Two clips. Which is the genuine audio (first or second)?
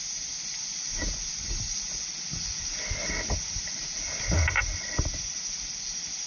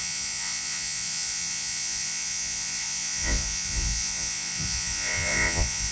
first